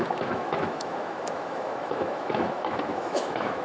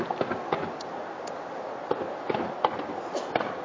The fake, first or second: first